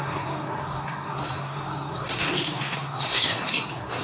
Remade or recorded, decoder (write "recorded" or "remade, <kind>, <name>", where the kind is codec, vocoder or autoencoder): remade, codec, SNAC